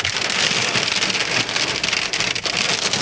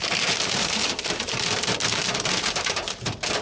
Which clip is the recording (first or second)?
first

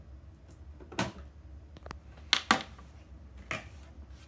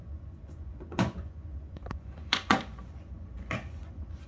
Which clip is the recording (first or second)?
first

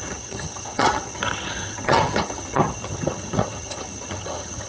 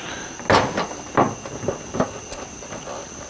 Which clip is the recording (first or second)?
second